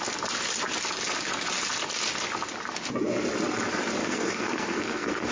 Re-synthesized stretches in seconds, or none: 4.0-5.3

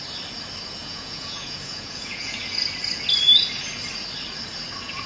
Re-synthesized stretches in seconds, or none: 0.8-2.4

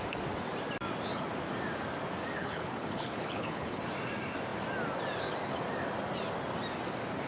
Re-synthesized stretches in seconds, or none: 2.4-3.8

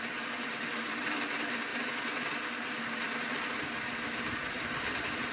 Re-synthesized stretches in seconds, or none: 0.0-1.7; 3.4-5.3

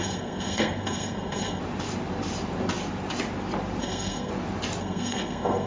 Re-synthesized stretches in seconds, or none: 0.0-1.6; 3.8-4.3; 4.8-5.7

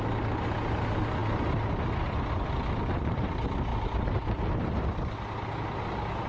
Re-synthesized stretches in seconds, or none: none